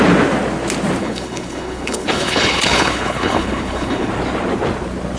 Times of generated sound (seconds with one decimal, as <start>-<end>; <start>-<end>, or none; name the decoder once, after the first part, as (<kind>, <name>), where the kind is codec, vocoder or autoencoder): 1.0-4.1 (codec, HILCodec)